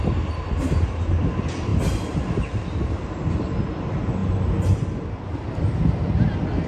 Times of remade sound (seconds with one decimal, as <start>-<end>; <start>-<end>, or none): none